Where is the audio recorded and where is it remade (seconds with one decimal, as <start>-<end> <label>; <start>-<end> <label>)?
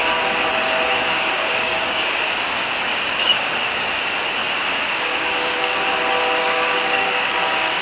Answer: 0.0-1.0 recorded; 1.0-4.4 remade; 4.4-4.9 recorded; 4.9-5.7 remade; 5.7-6.4 recorded; 6.4-7.8 remade